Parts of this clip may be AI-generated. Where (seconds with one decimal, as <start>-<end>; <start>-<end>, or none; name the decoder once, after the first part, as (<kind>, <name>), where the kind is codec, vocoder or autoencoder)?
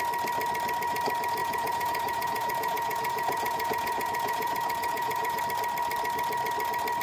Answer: 1.4-5.4 (vocoder, Vocos)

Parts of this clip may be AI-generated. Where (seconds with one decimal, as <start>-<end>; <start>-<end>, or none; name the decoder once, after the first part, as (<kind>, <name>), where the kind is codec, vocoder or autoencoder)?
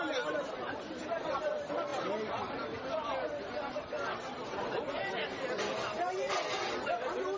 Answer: none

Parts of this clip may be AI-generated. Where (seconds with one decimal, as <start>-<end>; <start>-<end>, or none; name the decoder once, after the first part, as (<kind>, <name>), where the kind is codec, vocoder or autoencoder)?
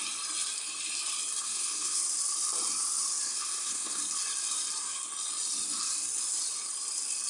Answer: 1.4-2.0 (codec, SNAC); 3.3-4.0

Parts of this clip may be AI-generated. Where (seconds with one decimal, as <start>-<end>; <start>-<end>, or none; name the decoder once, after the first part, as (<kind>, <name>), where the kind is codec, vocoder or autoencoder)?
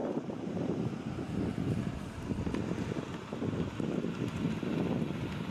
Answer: 0.0-0.7 (vocoder, BigVGAN v2); 1.5-2.1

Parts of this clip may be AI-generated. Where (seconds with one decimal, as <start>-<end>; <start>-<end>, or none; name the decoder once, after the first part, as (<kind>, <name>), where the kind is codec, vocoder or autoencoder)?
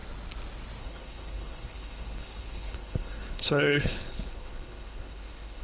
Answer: 0.8-5.6 (codec, HILCodec)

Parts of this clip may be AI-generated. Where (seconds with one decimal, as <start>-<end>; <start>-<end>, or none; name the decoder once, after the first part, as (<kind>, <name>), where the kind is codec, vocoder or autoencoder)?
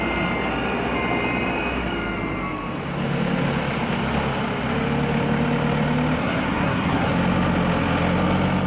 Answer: 6.2-7.1 (codec, SNAC)